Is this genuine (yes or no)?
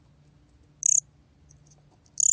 yes